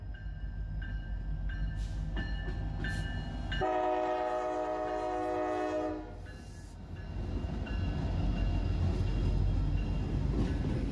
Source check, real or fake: real